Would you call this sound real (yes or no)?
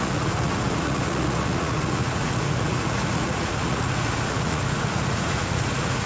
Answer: no